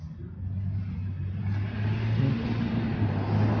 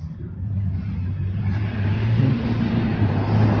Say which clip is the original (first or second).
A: first